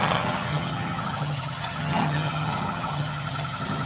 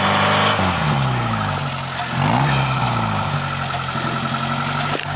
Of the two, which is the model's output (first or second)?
first